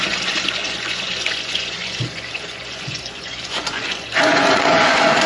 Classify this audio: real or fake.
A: fake